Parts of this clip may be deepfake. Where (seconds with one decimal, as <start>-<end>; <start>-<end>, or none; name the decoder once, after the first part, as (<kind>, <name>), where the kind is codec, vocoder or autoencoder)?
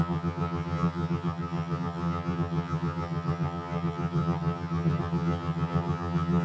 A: 0.0-6.4 (vocoder, HiFi-GAN)